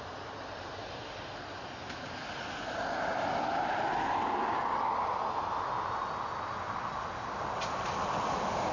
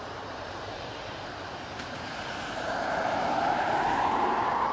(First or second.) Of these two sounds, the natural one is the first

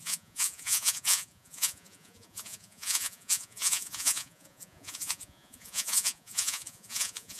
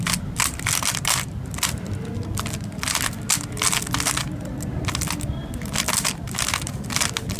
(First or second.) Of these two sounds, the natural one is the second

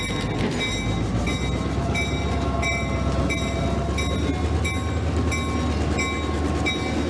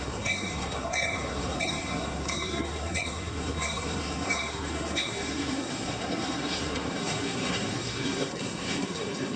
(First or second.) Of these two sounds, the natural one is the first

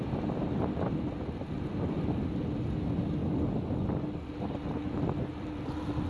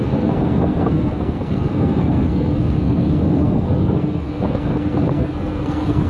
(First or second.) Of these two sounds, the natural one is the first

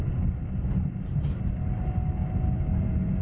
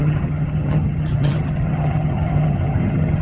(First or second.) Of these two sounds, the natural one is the first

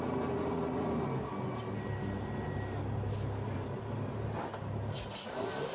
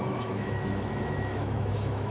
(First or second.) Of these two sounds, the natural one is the first